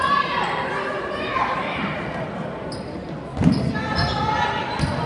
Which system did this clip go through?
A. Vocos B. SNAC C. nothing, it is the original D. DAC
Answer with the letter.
C